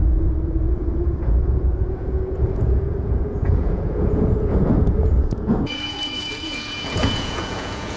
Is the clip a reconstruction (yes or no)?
yes